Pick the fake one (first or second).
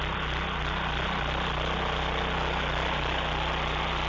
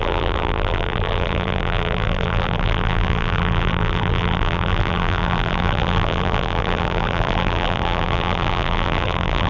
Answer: second